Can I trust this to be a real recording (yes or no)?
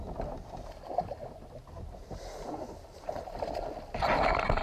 yes